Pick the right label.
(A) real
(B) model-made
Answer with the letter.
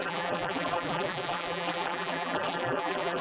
B